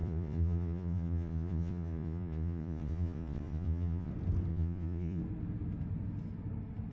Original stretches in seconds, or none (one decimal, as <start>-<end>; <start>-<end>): 4.1-4.5; 5.2-6.9